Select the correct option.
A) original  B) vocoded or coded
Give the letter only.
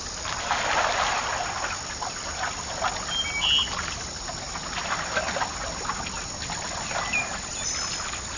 A